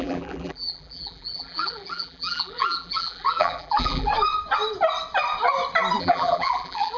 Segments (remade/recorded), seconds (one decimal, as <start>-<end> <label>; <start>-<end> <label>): 0.0-4.1 remade; 4.1-6.0 recorded; 6.0-7.0 remade